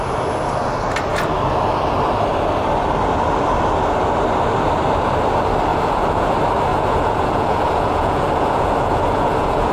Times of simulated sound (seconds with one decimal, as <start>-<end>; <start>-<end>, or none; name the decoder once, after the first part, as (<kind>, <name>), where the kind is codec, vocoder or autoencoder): 5.7-6.3 (vocoder, Vocos); 6.7-9.7